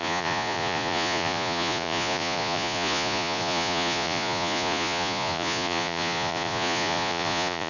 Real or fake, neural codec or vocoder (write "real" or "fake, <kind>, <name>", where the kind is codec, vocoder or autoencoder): fake, vocoder, Vocos